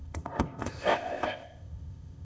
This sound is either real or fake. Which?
fake